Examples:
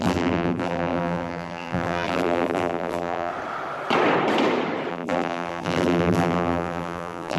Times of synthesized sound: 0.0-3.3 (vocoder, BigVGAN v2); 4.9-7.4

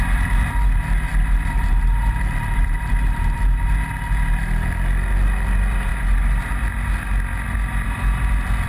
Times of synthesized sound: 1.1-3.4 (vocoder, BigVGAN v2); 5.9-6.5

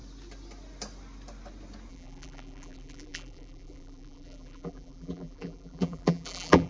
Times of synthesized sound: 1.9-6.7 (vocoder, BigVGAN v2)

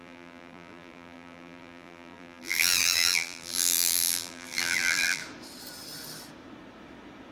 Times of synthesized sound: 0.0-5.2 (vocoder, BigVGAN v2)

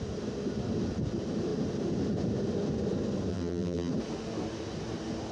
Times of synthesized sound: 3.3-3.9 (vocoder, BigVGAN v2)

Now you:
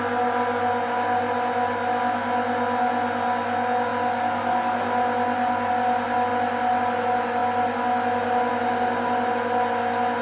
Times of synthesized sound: none

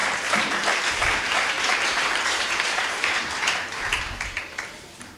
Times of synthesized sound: 0.0-5.2 (vocoder, BigVGAN v2)

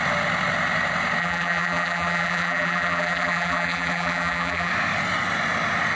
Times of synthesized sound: 1.2-4.7 (vocoder, BigVGAN v2)